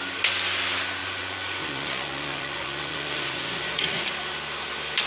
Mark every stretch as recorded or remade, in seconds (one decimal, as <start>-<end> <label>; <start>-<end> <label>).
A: 0.0-1.0 recorded; 1.0-4.1 remade; 4.1-5.1 recorded